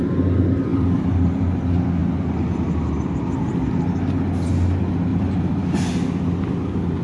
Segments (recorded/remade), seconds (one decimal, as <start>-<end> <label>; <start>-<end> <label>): 0.0-0.7 recorded; 0.7-1.4 remade; 1.4-5.1 recorded; 5.1-5.7 remade; 5.7-7.0 recorded